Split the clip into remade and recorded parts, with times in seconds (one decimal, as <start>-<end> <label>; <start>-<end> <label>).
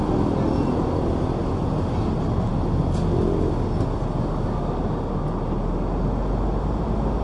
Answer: 0.0-7.2 recorded